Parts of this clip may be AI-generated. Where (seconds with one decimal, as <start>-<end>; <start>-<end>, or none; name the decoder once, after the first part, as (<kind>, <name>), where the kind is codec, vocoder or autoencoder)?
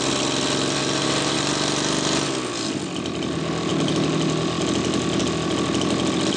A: none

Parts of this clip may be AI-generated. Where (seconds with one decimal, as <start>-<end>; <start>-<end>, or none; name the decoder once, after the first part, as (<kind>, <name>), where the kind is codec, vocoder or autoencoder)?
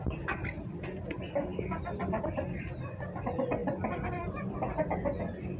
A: none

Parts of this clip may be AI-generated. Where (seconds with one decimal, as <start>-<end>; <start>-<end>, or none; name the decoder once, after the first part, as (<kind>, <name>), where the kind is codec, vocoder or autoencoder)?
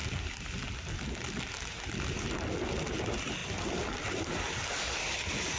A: none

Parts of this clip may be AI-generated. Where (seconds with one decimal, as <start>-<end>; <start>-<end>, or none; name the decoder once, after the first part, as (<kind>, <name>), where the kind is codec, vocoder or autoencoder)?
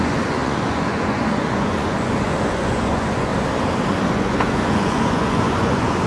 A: 0.0-3.3 (vocoder, Vocos); 4.1-6.1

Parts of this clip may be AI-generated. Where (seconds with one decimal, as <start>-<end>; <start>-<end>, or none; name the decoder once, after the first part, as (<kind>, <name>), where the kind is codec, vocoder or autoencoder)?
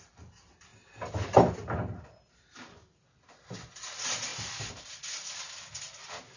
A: none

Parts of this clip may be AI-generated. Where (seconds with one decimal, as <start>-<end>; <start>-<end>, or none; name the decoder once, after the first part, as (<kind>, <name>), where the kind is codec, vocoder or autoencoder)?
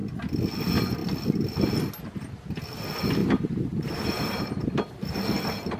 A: 3.2-5.2 (vocoder, BigVGAN v2)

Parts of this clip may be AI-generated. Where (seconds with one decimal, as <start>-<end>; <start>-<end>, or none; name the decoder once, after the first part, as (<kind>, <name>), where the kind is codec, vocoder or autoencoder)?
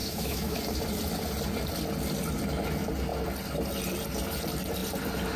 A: 0.0-0.6 (autoencoder, DAC-VAE)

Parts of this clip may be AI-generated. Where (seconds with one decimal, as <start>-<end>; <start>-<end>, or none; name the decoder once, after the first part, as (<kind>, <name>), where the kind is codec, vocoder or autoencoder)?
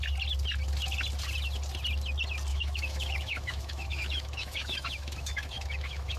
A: 2.5-6.2 (autoencoder, DAC-VAE)